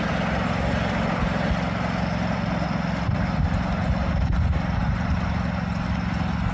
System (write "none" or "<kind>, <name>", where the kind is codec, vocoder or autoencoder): none